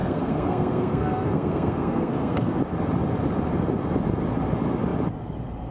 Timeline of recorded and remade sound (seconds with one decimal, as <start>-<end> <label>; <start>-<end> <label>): 0.0-2.6 remade; 2.6-5.7 recorded